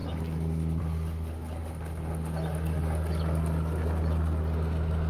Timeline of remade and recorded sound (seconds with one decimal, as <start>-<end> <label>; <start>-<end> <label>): 0.0-5.1 recorded